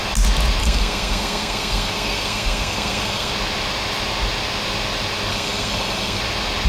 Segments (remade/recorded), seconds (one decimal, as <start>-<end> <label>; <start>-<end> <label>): 0.0-0.6 recorded; 0.6-3.3 remade; 3.3-5.3 recorded; 5.3-6.2 remade; 6.2-6.7 recorded